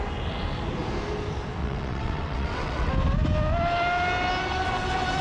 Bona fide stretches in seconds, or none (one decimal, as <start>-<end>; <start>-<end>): 0.0-1.6; 2.9-5.2